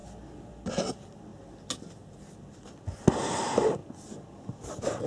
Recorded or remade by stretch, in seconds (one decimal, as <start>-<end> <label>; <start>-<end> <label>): 0.0-5.1 recorded